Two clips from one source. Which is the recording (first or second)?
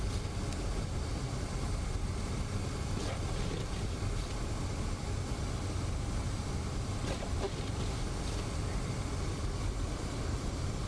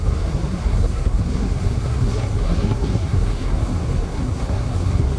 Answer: first